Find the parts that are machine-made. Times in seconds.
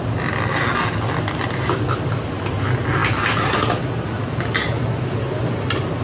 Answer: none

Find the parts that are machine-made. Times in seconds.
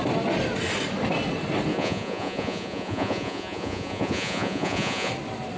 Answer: 1.7-5.1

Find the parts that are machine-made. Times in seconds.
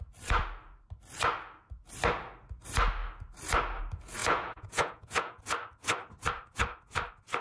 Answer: 4.2-5.4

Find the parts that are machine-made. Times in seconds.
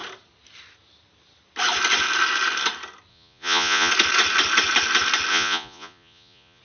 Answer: 3.1-3.9; 5.3-6.6